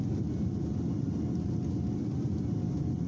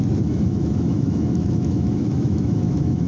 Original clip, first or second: first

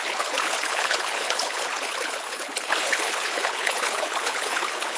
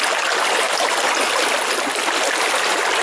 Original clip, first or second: second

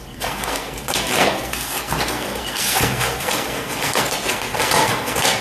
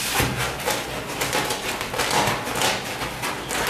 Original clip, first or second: second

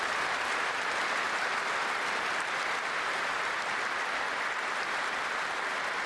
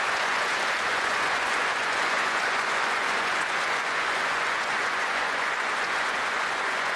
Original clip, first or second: first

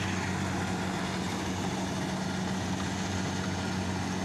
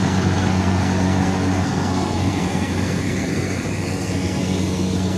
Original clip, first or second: first